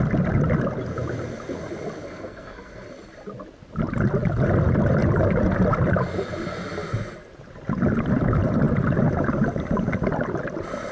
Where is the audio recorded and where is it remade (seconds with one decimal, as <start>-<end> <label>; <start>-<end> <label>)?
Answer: 0.0-2.1 recorded; 2.1-2.9 remade; 2.9-10.9 recorded